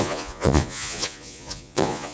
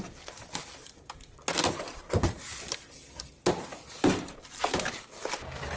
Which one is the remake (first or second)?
first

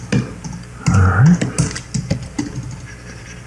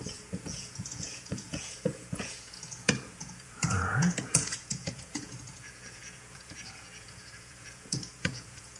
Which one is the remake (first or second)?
second